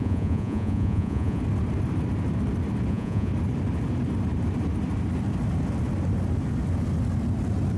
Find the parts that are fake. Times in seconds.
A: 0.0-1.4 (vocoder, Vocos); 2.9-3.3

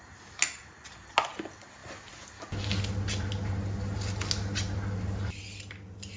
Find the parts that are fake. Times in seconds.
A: none

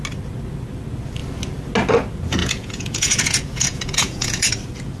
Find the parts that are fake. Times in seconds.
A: 2.4-4.5 (vocoder, Vocos)